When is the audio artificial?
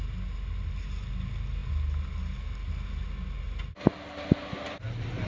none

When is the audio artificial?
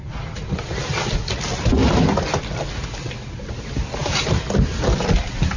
none